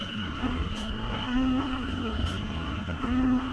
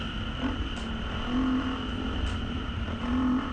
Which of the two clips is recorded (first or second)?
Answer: second